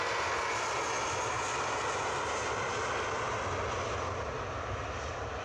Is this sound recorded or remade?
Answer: recorded